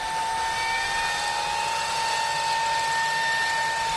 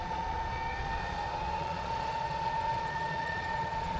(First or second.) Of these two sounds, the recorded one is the first